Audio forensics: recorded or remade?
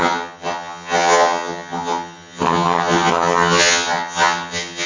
remade